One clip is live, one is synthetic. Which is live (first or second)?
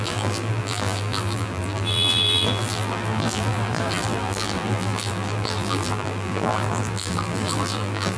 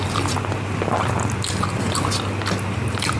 second